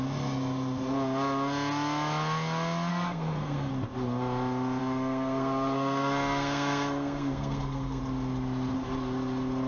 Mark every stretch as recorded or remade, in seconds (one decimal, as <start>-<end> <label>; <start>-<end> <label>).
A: 0.0-2.9 recorded; 2.9-3.7 remade; 3.7-4.8 recorded; 4.8-8.0 remade; 8.0-9.7 recorded